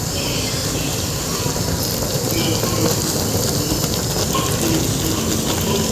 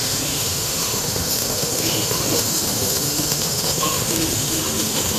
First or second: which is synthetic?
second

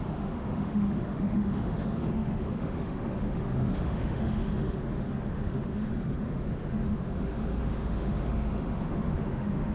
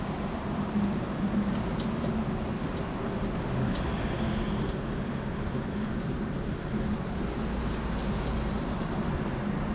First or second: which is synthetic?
first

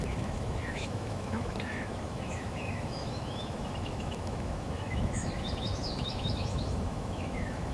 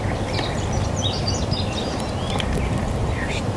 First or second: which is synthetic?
first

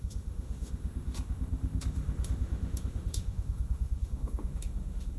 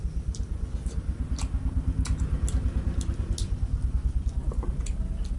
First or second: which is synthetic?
first